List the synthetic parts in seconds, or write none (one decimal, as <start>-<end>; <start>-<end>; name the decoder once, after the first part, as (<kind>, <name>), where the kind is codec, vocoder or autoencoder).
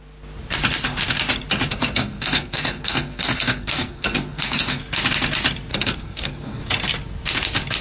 1.7-4.8 (codec, SNAC); 5.7-6.6